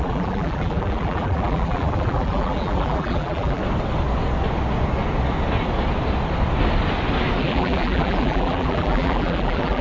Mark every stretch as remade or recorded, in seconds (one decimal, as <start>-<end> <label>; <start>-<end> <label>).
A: 0.0-3.6 remade; 3.6-7.4 recorded; 7.4-9.8 remade